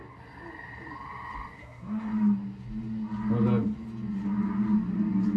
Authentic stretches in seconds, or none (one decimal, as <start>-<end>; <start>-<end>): 0.0-1.6; 2.1-5.4